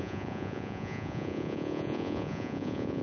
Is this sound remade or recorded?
remade